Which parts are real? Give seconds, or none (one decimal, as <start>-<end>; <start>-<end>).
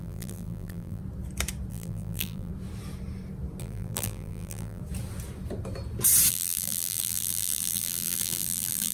1.0-1.7; 2.5-3.6; 4.8-6.3